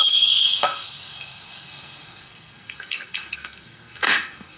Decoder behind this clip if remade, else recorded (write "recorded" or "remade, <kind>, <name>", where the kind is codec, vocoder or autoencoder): remade, codec, SNAC